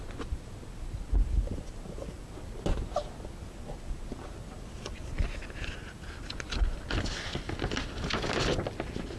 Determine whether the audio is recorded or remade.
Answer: recorded